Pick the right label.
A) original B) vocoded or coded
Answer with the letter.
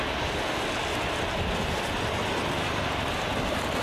A